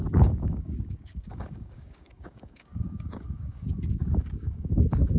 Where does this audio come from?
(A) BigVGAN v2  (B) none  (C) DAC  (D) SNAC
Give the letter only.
C